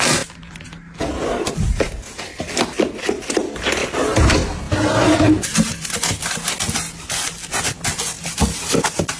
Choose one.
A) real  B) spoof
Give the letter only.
A